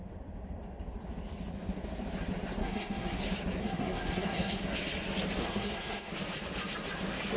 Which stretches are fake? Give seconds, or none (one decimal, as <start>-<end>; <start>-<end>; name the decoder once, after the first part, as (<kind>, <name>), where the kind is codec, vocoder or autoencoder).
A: 2.6-3.2 (codec, SNAC); 3.6-4.6; 5.4-6.1

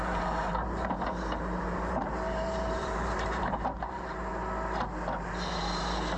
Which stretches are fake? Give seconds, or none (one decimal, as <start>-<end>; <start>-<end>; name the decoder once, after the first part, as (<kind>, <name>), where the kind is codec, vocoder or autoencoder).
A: 0.0-4.3 (vocoder, BigVGAN v2); 5.3-6.2

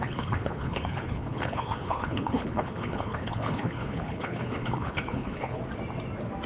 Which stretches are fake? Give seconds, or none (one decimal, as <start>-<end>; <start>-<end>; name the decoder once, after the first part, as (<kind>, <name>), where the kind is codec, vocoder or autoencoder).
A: 0.0-5.6 (codec, HILCodec)